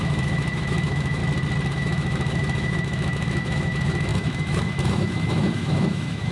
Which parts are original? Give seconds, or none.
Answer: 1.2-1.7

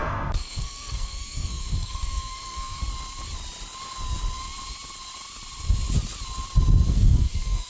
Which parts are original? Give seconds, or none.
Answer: 2.8-6.9

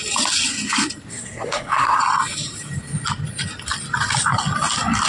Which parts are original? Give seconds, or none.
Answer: 0.0-1.1; 2.0-5.1

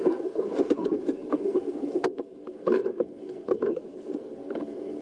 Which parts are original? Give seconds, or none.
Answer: none

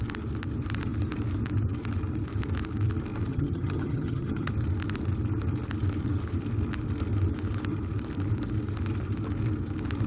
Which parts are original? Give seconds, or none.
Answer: 0.0-3.3; 4.5-10.1

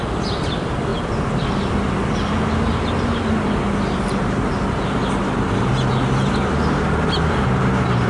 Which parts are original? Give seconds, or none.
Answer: 0.0-8.1

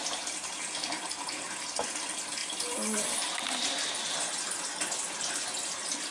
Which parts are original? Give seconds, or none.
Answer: 0.0-6.1